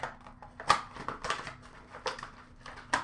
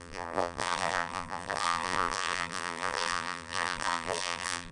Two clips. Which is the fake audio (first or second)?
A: second